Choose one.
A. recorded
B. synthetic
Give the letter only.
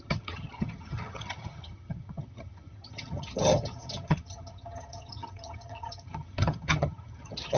B